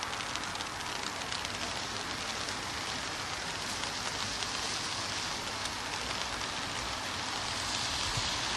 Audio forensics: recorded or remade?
recorded